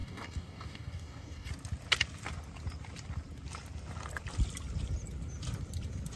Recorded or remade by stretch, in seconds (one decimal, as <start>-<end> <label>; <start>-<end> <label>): 0.0-1.5 remade; 1.5-6.2 recorded